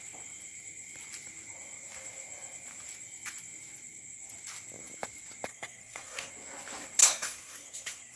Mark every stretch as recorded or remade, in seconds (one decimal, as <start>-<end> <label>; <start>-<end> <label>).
0.0-5.5 recorded; 5.5-6.3 remade; 6.3-7.0 recorded; 7.0-8.2 remade